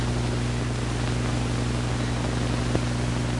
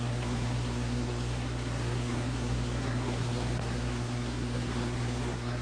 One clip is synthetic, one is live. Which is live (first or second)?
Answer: first